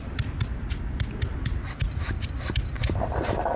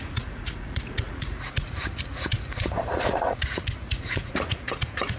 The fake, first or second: second